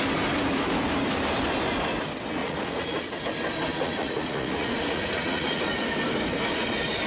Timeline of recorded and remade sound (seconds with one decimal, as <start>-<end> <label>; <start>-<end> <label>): 0.0-2.4 recorded; 2.4-3.2 remade; 3.2-3.7 recorded; 3.7-5.6 remade; 5.6-7.1 recorded